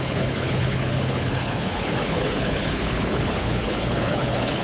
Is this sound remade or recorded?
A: remade